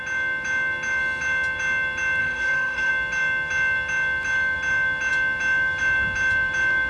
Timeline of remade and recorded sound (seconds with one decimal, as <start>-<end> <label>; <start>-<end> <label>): 0.0-2.2 recorded; 2.2-2.9 remade; 2.9-6.9 recorded